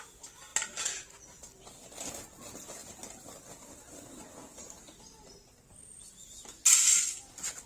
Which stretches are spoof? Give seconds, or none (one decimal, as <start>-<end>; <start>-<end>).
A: none